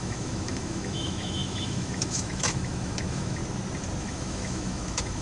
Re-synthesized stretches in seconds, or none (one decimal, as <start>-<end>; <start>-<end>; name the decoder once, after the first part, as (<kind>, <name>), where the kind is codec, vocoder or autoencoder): 0.0-3.4 (autoencoder, DAC-VAE); 4.0-5.2